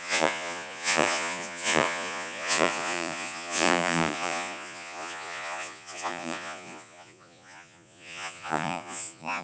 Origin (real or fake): fake